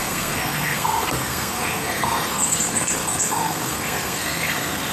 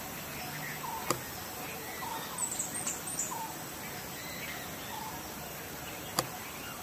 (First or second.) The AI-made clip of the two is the first